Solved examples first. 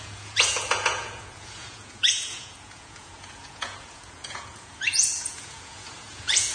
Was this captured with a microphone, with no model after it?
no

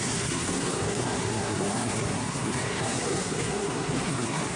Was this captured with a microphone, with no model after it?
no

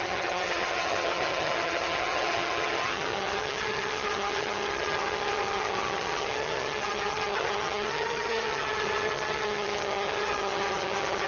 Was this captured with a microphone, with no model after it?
no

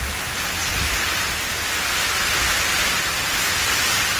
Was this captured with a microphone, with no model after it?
yes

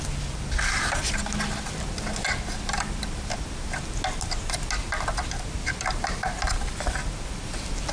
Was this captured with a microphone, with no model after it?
yes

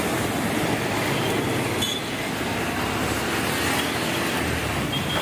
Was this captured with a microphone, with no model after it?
yes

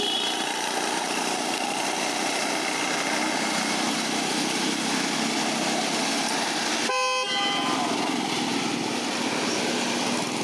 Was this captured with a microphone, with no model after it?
yes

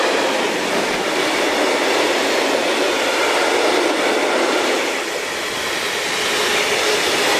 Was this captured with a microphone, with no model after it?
yes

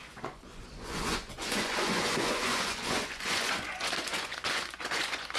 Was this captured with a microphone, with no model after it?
no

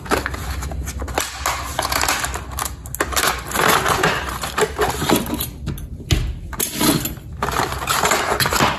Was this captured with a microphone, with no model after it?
yes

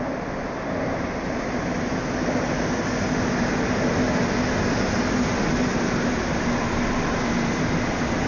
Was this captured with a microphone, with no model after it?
yes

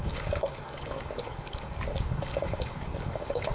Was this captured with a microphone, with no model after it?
no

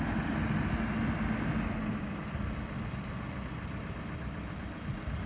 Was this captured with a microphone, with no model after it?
yes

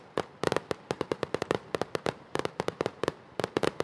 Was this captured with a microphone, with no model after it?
no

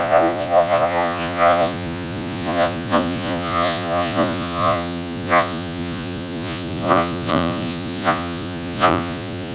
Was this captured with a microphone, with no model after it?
no